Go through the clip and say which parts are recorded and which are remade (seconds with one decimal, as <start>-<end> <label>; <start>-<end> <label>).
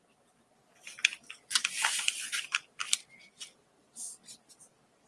0.0-5.1 recorded